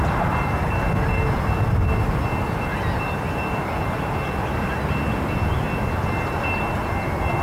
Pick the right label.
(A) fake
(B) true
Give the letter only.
B